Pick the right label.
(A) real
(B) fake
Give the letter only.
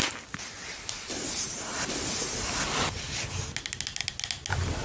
A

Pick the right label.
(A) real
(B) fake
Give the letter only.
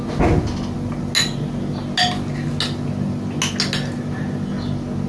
A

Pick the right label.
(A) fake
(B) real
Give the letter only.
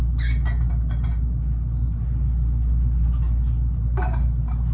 B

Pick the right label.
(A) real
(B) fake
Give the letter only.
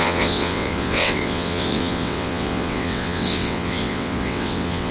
B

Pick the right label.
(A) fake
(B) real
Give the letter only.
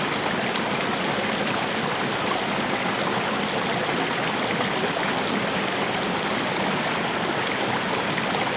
B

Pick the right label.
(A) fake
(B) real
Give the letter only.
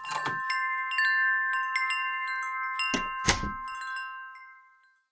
B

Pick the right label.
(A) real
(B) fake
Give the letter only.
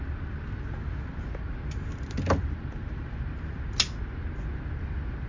A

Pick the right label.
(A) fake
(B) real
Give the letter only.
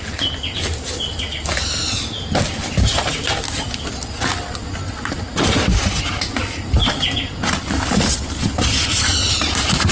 B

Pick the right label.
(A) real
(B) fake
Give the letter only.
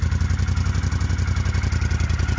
A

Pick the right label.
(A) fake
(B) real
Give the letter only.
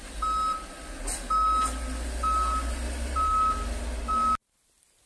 B